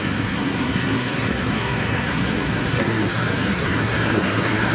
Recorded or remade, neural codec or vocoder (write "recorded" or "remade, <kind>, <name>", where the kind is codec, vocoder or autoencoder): remade, codec, SNAC